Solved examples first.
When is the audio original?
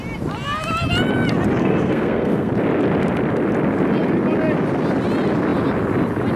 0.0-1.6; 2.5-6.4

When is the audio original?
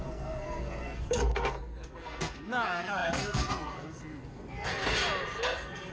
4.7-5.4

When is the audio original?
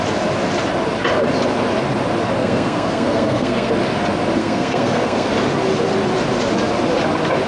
0.0-2.4; 3.7-4.4; 5.3-7.5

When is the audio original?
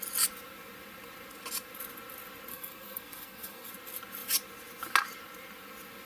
0.0-2.5; 3.7-6.1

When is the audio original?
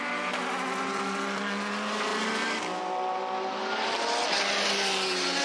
0.0-5.4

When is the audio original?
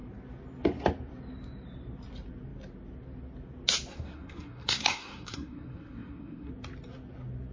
0.0-3.9; 6.5-7.5